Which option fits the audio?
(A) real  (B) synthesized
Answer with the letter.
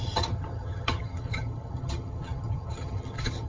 B